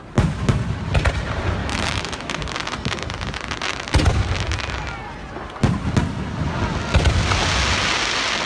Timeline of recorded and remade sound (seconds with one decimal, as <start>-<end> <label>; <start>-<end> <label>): 0.0-1.6 recorded; 1.6-2.4 remade; 2.4-8.5 recorded